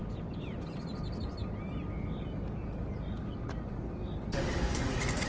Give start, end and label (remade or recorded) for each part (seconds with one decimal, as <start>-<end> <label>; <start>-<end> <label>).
0.0-3.2 recorded; 3.2-4.0 remade; 4.0-4.8 recorded; 4.8-5.3 remade